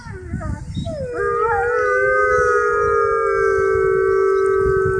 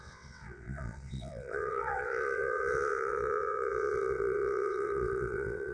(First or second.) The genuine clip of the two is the first